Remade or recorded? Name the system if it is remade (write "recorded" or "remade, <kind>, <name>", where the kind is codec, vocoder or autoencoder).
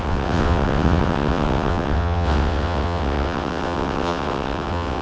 remade, vocoder, WaveNeXt